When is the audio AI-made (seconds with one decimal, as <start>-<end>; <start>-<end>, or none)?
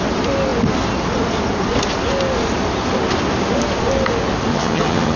4.5-5.2